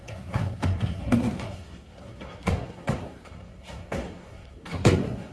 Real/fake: fake